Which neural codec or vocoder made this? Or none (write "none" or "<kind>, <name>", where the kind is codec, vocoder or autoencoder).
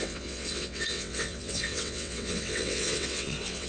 vocoder, WaveNeXt